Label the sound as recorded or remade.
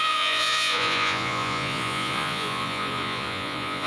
remade